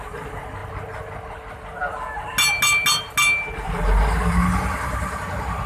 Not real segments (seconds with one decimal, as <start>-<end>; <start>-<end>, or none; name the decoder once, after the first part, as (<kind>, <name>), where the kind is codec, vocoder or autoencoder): none